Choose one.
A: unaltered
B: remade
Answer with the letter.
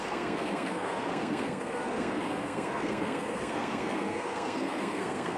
B